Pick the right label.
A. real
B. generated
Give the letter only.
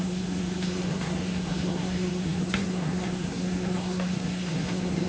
B